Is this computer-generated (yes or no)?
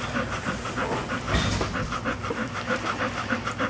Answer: no